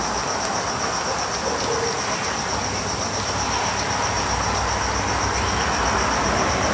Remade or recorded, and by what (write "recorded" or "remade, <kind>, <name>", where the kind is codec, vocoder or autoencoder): recorded